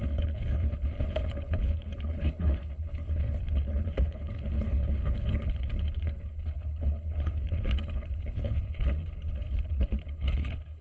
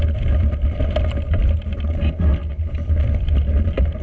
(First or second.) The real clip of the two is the second